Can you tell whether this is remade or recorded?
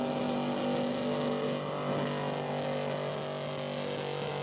recorded